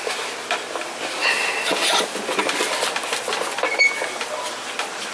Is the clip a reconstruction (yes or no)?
no